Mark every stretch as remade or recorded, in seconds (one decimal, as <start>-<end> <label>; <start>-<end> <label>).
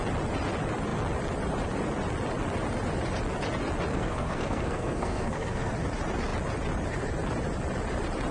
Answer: 0.0-3.9 recorded; 3.9-5.7 remade; 5.7-8.3 recorded